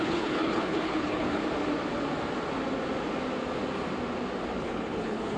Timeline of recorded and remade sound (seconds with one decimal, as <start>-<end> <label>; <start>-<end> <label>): 0.0-1.4 remade; 1.4-4.6 recorded; 4.6-5.4 remade